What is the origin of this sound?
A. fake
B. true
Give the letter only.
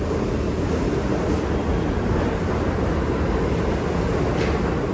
B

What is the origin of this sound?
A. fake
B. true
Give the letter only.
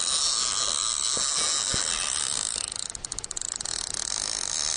B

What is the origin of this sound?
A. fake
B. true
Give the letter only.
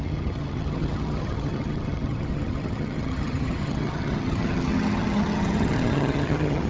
A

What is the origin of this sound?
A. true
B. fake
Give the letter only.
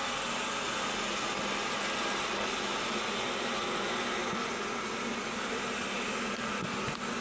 A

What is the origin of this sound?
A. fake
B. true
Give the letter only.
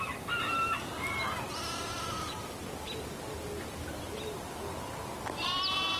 B